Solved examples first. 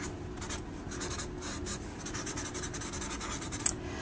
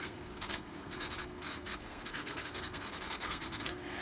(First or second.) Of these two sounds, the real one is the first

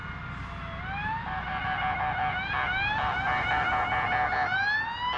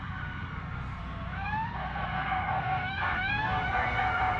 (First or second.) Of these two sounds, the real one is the first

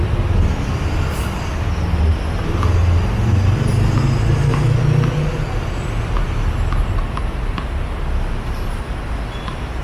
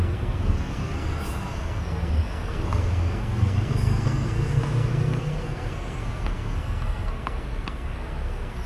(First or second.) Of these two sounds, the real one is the first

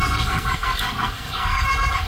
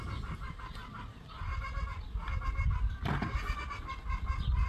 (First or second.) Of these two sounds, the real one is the second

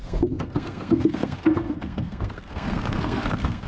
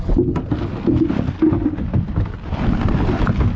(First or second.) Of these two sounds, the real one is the second